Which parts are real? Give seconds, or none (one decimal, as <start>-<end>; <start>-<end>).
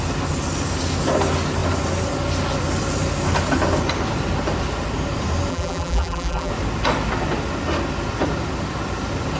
0.0-5.5; 6.5-9.4